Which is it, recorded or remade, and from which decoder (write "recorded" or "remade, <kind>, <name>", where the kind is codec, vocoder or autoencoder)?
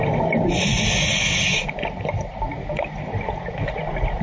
recorded